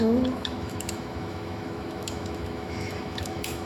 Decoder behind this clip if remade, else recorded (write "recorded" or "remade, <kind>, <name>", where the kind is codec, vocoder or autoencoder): remade, autoencoder, DAC-VAE